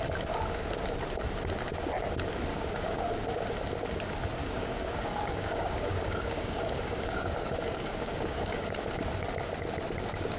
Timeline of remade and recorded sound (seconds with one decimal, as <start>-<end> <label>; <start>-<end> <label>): 0.0-2.5 recorded; 2.5-3.0 remade; 3.0-4.4 recorded; 4.4-9.0 remade; 9.0-10.4 recorded